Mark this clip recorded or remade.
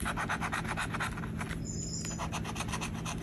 recorded